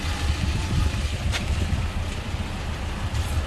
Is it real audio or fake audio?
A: fake